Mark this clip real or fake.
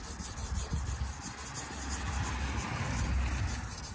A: real